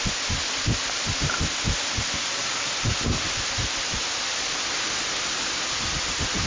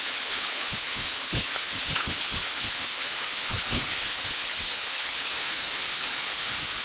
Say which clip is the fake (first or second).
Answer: second